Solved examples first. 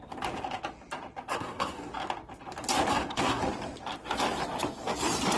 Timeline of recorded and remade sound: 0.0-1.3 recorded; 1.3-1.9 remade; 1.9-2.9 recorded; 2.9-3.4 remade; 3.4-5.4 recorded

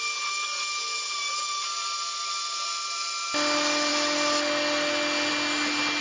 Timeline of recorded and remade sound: 0.0-6.0 recorded

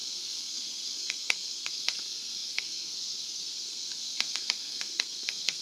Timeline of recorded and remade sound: 0.0-5.6 remade

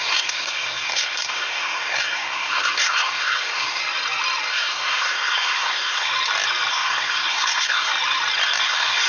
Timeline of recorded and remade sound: 0.0-3.8 remade; 3.8-4.5 recorded; 4.5-6.1 remade; 6.1-6.7 recorded; 6.7-7.9 remade; 7.9-8.6 recorded; 8.6-9.1 remade

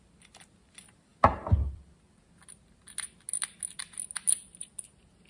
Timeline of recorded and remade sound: 0.0-5.3 recorded

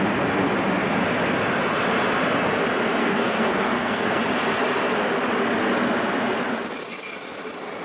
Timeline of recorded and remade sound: 0.0-3.0 recorded; 3.0-4.2 remade; 4.2-7.8 recorded

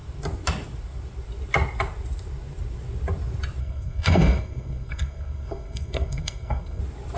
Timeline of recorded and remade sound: 0.0-3.6 recorded; 3.6-6.8 remade; 6.8-7.2 recorded

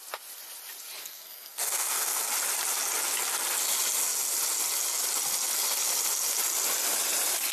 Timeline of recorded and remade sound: 0.0-1.0 recorded; 1.0-2.3 remade; 2.3-7.5 recorded